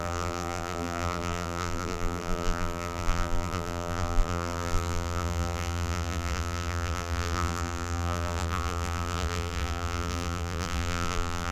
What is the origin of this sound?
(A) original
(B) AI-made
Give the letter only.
B